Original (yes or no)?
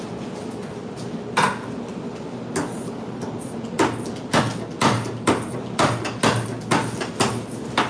yes